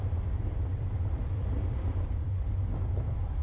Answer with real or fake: fake